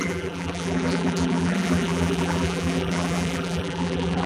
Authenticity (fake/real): fake